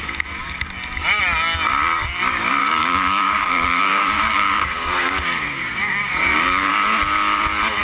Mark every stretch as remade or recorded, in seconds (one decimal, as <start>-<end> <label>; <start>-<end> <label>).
0.0-2.6 recorded; 2.6-6.7 remade; 6.7-7.8 recorded